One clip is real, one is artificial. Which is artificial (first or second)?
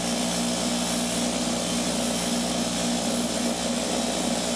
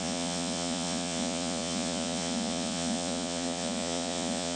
second